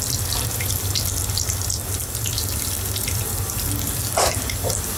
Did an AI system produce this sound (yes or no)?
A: no